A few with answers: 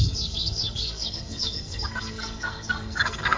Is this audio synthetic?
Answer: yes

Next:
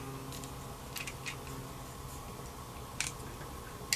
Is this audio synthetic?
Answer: no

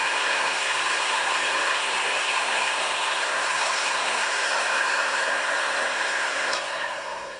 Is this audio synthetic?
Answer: yes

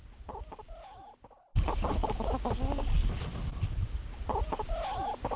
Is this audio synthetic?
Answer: no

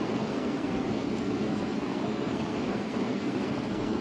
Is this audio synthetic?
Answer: yes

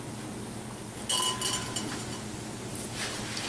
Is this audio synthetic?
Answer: no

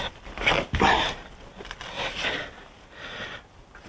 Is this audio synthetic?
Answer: no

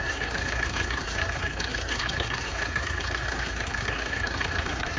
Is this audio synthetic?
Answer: yes